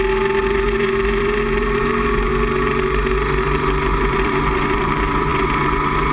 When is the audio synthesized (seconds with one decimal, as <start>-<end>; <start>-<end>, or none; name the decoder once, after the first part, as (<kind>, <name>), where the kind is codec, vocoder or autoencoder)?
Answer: 0.0-2.3 (vocoder, BigVGAN v2); 3.4-6.1